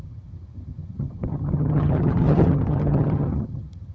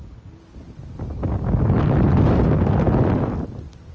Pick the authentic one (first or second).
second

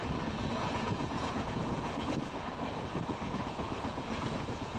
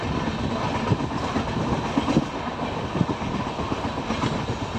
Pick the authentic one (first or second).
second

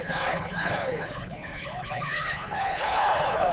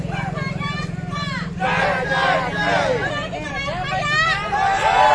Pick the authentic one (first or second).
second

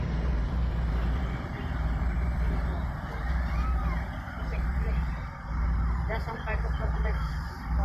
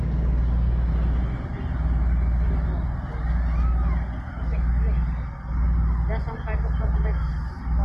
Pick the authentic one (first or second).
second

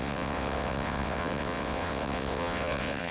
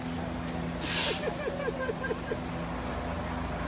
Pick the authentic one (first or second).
second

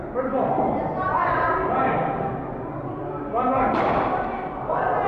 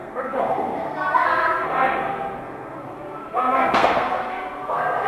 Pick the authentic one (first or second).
first